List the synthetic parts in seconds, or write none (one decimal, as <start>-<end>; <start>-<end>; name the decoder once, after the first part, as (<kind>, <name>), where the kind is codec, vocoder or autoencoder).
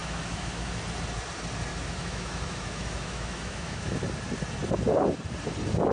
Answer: 0.0-0.8 (autoencoder, DAC-VAE); 1.7-4.0